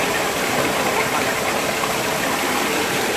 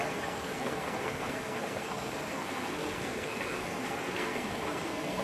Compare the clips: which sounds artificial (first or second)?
second